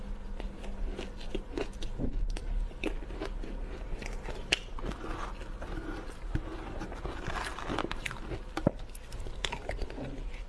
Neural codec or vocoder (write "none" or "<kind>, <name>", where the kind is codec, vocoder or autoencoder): none